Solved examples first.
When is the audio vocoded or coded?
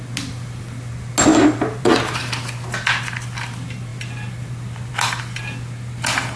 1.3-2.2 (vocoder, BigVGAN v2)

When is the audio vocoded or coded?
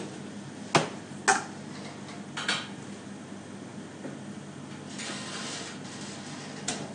none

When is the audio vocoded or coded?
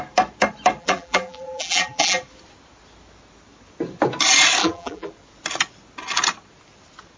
0.8-2.2 (vocoder, BigVGAN v2); 4.6-5.1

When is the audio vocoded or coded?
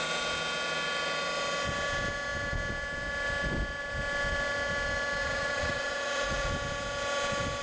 5.2-6.5 (vocoder, Vocos)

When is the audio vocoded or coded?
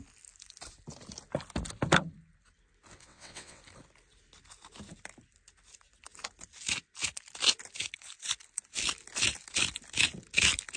3.0-3.6 (vocoder, WaveNeXt)